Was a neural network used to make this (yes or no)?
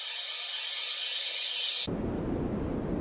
no